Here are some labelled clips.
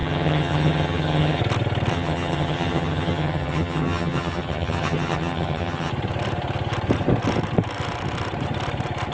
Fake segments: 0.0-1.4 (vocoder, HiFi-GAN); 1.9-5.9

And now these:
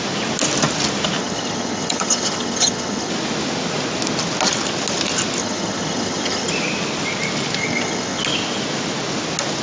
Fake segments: 1.2-3.1 (vocoder, HiFi-GAN); 5.4-6.5; 7.6-8.2

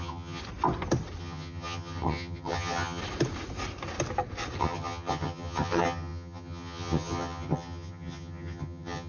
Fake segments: 0.0-0.4 (vocoder, HiFi-GAN); 1.2-3.0; 4.6-9.1

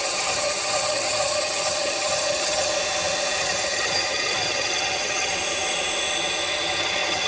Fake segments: 0.0-2.7 (vocoder, HiFi-GAN); 3.4-5.3; 6.8-7.3

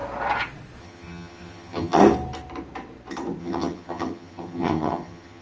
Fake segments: 0.8-2.0 (vocoder, HiFi-GAN); 3.4-5.4